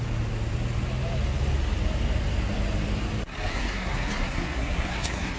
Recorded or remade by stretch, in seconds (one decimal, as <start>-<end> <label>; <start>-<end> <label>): 0.0-3.5 recorded; 3.5-5.4 remade